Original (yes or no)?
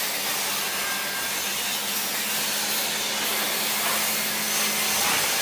yes